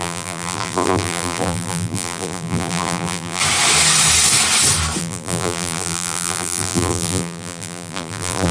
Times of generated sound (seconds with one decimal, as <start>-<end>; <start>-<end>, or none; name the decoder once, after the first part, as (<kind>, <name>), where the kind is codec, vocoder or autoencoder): 0.0-3.4 (vocoder, BigVGAN v2); 5.0-8.5